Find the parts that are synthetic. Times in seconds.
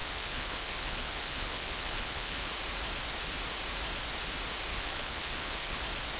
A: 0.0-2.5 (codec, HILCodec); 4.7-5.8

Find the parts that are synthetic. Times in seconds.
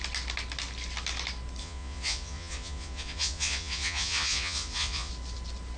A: 1.6-5.1 (vocoder, Vocos)